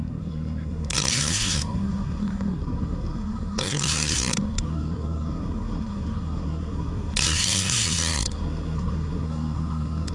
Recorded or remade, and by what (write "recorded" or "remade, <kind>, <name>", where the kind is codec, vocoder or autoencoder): remade, codec, SNAC